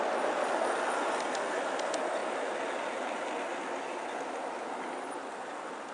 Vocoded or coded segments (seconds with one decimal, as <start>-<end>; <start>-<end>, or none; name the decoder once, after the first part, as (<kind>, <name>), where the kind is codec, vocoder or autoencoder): none